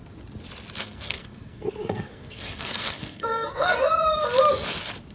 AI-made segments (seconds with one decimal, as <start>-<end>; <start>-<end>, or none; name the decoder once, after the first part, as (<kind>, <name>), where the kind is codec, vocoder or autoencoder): 0.8-3.9 (codec, SNAC)